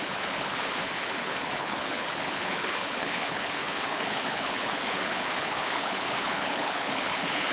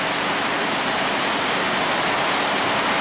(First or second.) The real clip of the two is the second